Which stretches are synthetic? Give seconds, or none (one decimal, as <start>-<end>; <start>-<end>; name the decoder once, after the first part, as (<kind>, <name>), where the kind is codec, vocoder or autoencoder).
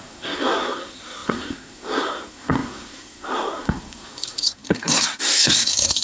0.0-6.0 (codec, SNAC)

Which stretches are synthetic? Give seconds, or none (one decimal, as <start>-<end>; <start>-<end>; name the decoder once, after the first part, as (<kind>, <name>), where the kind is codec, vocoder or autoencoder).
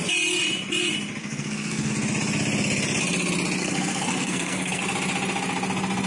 1.2-1.9 (codec, SNAC); 3.6-4.8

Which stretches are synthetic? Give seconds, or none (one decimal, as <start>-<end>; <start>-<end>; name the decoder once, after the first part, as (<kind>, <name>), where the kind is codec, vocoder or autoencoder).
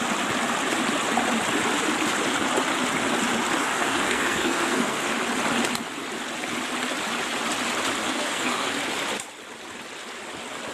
3.6-5.0 (codec, SNAC); 8.0-8.9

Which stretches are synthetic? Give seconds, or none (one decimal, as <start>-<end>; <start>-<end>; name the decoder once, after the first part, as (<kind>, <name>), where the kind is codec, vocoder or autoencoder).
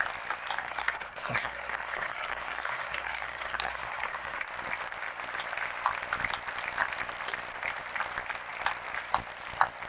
0.6-4.4 (codec, SNAC)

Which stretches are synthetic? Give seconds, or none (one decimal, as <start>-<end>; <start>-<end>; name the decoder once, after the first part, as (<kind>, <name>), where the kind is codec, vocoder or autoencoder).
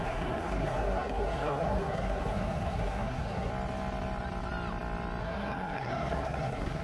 0.0-3.5 (codec, SNAC); 5.2-6.8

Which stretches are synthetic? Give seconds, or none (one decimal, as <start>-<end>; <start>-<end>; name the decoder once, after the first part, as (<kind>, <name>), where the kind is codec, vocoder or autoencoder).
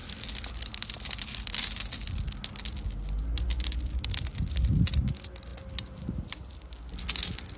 none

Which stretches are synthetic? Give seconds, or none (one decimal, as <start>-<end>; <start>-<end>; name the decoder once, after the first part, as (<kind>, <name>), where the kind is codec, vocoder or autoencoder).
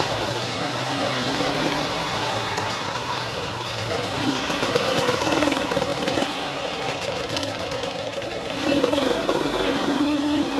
0.0-10.6 (codec, SNAC)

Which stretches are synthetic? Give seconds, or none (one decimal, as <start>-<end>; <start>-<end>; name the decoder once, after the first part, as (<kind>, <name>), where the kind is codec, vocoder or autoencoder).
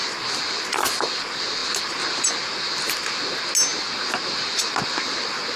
none